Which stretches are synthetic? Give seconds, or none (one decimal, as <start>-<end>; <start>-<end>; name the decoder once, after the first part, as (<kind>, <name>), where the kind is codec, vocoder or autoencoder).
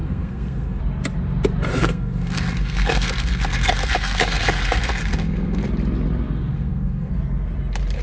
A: 0.0-0.8 (codec, SNAC); 1.7-5.6; 6.5-7.1